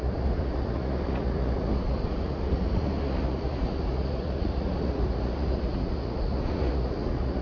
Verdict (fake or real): fake